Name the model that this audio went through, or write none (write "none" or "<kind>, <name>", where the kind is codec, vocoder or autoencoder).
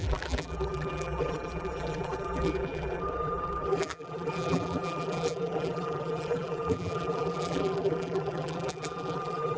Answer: vocoder, BigVGAN v2